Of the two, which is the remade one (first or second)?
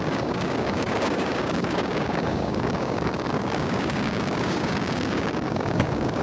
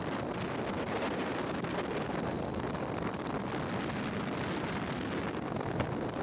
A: first